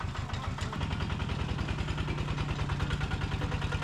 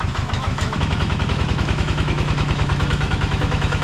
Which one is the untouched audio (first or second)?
first